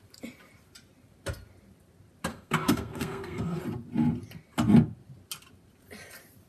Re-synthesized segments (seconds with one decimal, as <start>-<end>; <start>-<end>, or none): 2.3-3.6